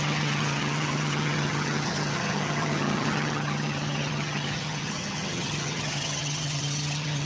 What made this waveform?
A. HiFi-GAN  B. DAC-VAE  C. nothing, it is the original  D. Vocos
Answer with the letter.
A